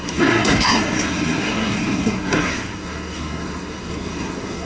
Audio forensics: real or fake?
fake